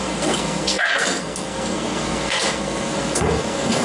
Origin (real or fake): fake